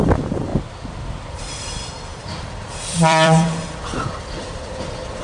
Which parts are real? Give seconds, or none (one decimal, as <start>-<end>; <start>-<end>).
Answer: 0.5-1.3